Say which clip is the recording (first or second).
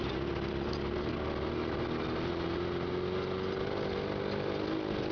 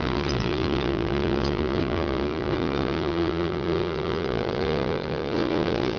first